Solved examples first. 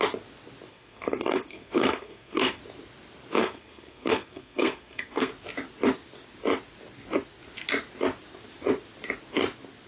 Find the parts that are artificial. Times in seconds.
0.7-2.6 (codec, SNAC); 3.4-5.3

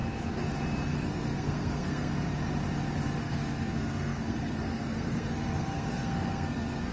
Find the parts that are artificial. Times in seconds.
0.9-2.1 (codec, SNAC); 3.2-6.9